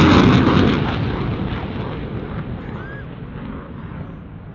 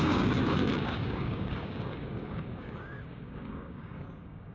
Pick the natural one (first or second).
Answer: first